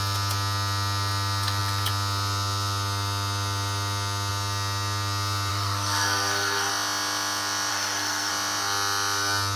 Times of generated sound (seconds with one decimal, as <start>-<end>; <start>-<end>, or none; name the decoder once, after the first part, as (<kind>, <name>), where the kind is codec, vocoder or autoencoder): 5.5-6.7 (codec, SNAC); 7.7-8.3